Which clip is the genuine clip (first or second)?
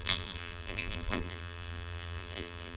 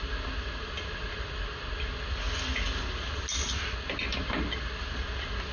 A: second